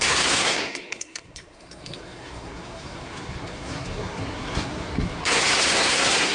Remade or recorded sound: remade